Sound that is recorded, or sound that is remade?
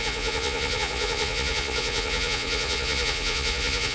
remade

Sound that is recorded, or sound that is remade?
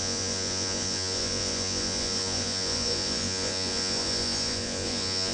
remade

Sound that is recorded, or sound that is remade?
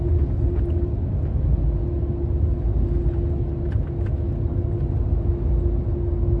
recorded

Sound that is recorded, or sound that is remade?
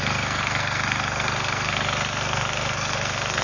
remade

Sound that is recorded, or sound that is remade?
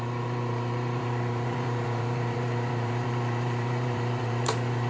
remade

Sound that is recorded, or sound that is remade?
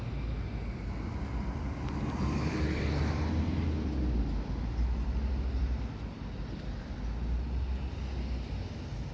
recorded